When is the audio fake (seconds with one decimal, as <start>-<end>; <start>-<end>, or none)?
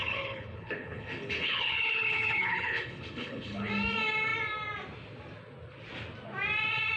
0.0-3.7